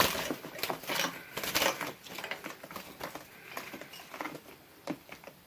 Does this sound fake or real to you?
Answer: real